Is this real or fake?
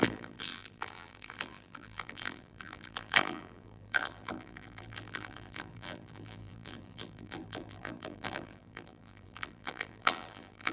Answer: fake